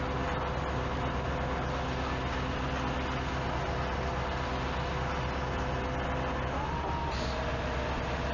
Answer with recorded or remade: recorded